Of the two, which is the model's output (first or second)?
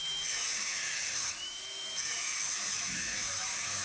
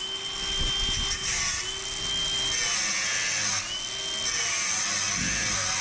first